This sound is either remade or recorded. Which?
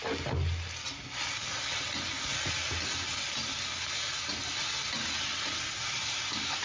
recorded